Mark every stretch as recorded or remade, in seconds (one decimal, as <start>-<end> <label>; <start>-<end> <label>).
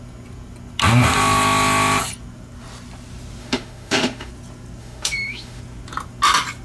0.0-3.4 recorded; 3.4-4.3 remade; 4.3-4.8 recorded; 4.8-5.6 remade; 5.6-6.6 recorded